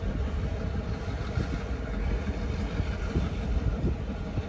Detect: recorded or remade recorded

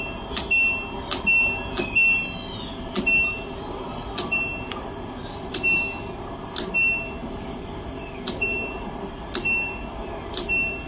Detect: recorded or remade recorded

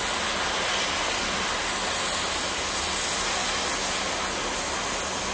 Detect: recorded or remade recorded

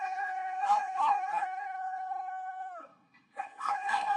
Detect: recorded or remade remade